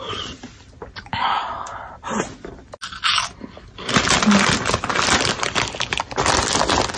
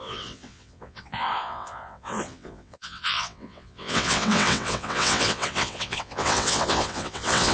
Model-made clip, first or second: second